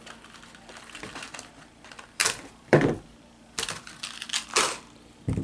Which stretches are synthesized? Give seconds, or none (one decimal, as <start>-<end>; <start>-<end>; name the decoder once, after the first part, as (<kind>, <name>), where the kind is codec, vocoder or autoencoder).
2.2-4.0 (vocoder, BigVGAN v2)